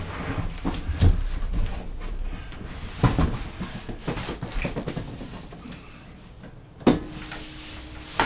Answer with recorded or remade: recorded